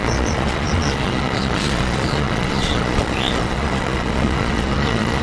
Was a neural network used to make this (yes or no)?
yes